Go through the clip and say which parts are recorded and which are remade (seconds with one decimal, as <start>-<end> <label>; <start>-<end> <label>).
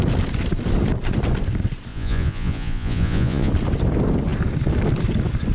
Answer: 0.0-1.9 recorded; 1.9-3.5 remade; 3.5-5.5 recorded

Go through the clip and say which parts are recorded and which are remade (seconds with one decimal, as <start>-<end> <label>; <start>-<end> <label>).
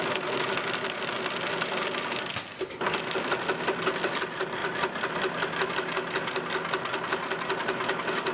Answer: 0.0-8.3 recorded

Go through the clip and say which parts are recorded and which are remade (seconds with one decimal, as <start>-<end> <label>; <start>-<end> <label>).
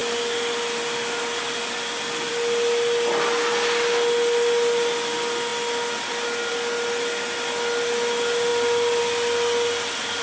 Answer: 0.0-10.2 recorded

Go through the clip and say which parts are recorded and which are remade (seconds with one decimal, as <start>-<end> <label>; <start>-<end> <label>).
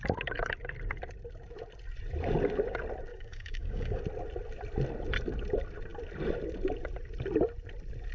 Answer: 0.0-3.1 recorded; 3.1-4.0 remade; 4.0-8.1 recorded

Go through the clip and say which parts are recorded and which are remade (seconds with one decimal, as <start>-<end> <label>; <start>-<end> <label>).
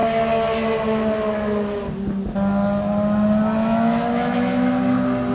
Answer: 0.0-5.3 recorded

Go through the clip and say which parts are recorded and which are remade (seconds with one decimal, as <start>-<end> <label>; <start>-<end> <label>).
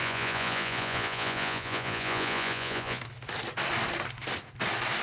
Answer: 0.0-3.0 remade; 3.0-5.0 recorded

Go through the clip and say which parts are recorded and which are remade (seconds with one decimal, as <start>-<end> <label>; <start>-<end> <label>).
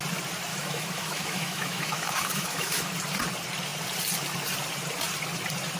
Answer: 0.0-0.5 recorded; 0.5-2.9 remade; 2.9-5.8 recorded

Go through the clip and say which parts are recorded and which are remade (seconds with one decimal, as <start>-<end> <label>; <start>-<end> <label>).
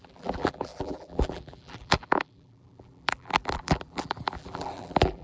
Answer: 0.0-5.2 remade